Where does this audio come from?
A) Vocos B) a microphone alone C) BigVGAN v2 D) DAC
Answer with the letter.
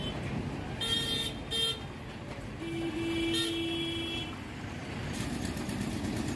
B